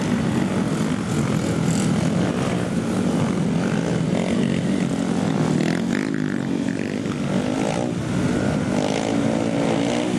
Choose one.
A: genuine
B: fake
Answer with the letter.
A